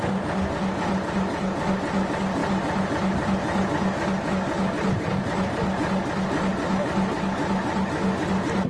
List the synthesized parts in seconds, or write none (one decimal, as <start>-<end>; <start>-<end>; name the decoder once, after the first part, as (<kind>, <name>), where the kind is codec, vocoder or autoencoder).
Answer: none